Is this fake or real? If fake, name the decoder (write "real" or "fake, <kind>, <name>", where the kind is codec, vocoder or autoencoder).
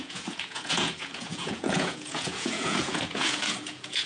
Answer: fake, vocoder, Vocos